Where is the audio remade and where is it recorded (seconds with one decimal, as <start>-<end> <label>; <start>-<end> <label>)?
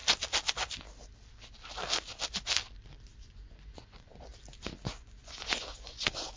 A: 0.0-3.2 recorded; 3.2-4.3 remade; 4.3-4.9 recorded; 4.9-6.4 remade